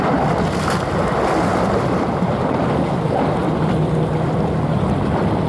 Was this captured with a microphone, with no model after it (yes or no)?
yes